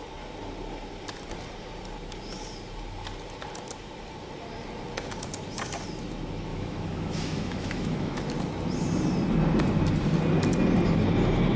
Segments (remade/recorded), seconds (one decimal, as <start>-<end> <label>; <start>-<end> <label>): 0.0-6.5 recorded; 6.5-8.2 remade; 8.2-11.6 recorded